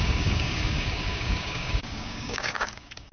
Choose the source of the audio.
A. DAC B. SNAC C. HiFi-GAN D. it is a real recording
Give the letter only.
A